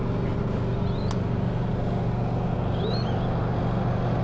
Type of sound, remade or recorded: recorded